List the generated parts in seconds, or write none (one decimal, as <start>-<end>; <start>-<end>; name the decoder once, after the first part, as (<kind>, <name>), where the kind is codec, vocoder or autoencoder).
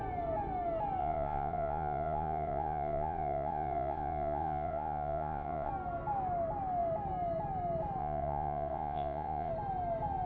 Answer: 1.0-5.7 (vocoder, Vocos); 8.0-9.5